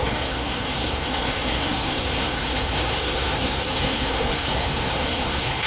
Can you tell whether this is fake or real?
fake